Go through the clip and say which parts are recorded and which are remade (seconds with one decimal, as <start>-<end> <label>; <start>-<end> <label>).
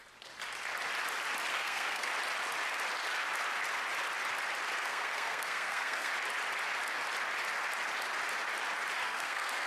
0.0-1.5 recorded; 1.5-2.1 remade; 2.1-4.8 recorded; 4.8-6.1 remade; 6.1-9.0 recorded; 9.0-9.7 remade